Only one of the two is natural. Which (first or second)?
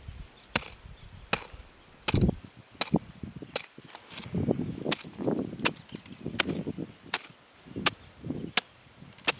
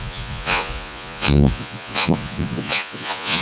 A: first